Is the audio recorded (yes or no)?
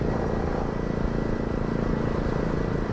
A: yes